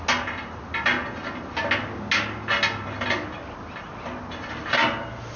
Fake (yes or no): no